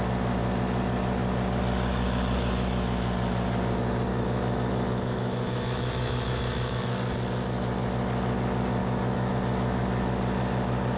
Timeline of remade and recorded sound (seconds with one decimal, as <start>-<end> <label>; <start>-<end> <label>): 0.0-4.1 recorded; 4.1-6.8 remade; 6.8-8.8 recorded; 8.8-9.4 remade; 9.4-11.0 recorded